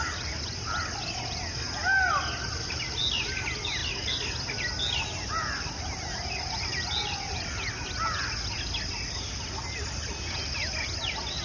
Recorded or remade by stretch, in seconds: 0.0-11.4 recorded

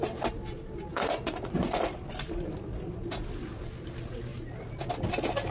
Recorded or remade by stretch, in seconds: 0.0-0.9 recorded; 0.9-2.0 remade; 2.0-5.5 recorded

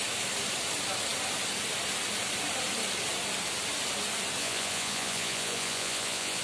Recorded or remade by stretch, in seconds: 0.0-4.4 recorded; 4.4-6.4 remade

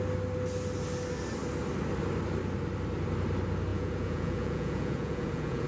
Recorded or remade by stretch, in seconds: 0.0-3.7 recorded; 3.7-5.7 remade

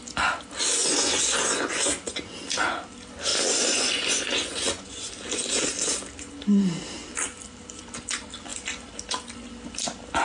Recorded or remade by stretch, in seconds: 0.0-0.8 recorded; 0.8-2.4 remade; 2.4-3.3 recorded; 3.3-5.1 remade; 5.1-10.2 recorded

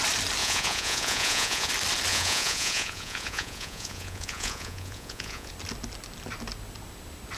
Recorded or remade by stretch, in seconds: 0.0-0.4 recorded; 0.4-1.7 remade; 1.7-2.1 recorded; 2.1-5.5 remade; 5.5-7.4 recorded

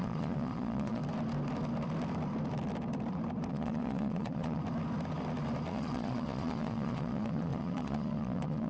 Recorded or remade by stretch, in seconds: 0.0-1.0 remade; 1.0-3.5 recorded; 3.5-4.6 remade; 4.6-5.7 recorded; 5.7-8.7 remade